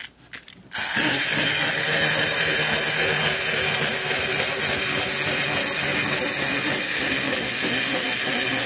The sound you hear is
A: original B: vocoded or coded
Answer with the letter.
A